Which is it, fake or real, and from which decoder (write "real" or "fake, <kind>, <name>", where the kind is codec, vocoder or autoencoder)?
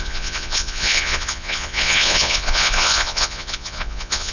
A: fake, vocoder, Vocos